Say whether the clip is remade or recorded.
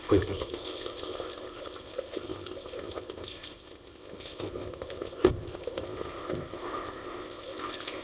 remade